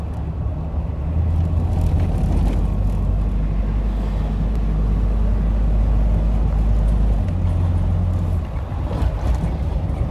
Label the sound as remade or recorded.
recorded